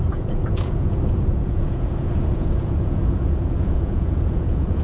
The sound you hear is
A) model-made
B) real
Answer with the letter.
A